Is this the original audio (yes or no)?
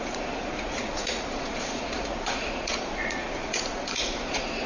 no